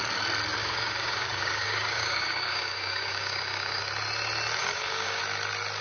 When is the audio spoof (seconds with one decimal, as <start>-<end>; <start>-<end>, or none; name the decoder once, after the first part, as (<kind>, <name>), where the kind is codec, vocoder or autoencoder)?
0.6-3.8 (codec, DAC); 4.6-5.2

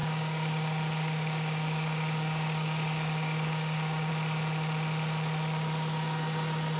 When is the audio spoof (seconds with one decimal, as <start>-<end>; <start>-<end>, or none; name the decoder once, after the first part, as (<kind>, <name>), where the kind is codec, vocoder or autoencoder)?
0.0-4.1 (codec, DAC)

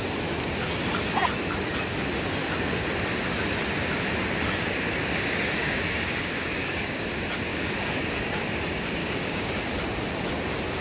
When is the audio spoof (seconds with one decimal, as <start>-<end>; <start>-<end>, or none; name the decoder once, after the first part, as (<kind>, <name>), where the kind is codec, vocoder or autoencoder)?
5.6-7.1 (codec, DAC); 7.5-8.3; 9.0-9.5

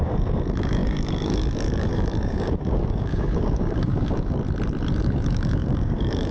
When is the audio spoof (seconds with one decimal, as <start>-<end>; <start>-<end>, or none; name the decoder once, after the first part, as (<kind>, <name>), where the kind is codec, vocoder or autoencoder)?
0.0-4.4 (codec, DAC); 5.0-6.3

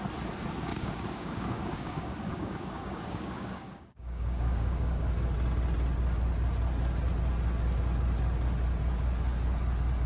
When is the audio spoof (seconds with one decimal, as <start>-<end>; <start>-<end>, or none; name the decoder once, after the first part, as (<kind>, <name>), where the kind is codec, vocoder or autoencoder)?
0.7-5.1 (codec, DAC)

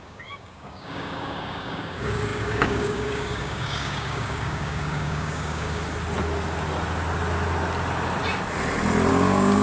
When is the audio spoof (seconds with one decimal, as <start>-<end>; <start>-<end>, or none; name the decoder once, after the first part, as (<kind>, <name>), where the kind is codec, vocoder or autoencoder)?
0.0-5.8 (codec, DAC); 9.1-9.6

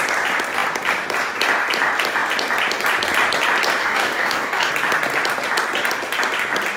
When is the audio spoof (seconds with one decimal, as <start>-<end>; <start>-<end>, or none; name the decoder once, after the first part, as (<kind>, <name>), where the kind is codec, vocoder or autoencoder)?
3.8-4.7 (codec, DAC)

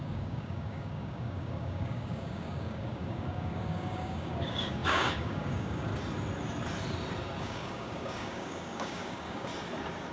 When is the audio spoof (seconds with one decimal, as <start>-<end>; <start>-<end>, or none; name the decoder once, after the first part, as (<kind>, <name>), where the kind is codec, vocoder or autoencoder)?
0.0-5.9 (codec, DAC); 7.4-9.5